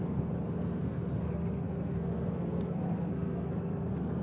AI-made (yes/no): yes